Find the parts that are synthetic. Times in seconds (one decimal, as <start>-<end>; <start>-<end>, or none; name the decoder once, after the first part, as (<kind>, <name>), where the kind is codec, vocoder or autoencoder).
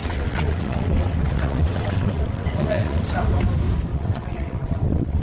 0.0-3.1 (vocoder, WaveNeXt); 3.9-5.2